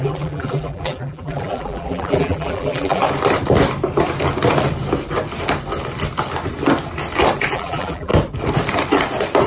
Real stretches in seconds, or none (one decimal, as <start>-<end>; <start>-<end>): 3.0-7.5; 8.1-9.5